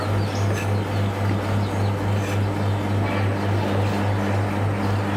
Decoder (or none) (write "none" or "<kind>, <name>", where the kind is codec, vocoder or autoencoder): none